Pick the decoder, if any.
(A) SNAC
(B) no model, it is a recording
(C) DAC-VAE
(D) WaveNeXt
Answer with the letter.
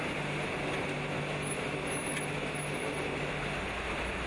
B